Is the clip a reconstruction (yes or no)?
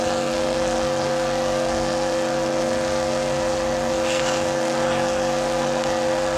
yes